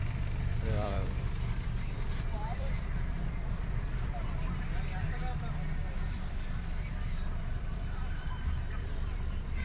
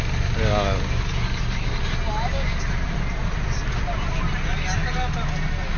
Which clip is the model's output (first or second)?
first